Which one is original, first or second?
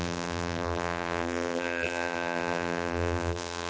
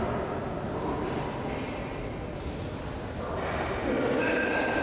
second